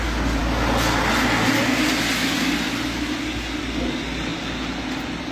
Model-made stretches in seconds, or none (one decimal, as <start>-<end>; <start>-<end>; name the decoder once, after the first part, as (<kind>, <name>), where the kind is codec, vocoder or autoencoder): none